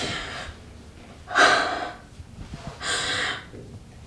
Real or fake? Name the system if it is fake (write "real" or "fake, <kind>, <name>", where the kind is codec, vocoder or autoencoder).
real